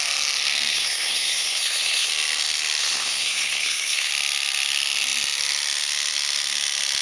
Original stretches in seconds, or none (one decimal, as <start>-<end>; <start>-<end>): 0.0-0.7; 2.1-2.8; 4.1-7.0